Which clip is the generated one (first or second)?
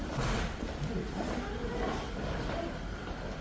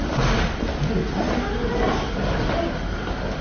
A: first